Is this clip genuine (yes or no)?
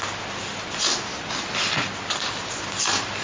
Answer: yes